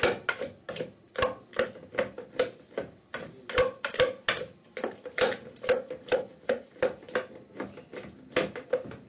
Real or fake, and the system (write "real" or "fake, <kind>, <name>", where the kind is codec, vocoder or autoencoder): real